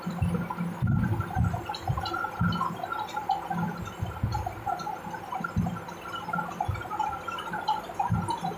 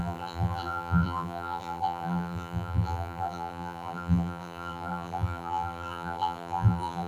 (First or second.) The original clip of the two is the first